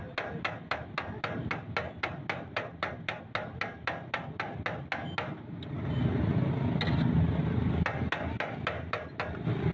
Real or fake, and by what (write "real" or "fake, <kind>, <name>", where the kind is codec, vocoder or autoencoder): real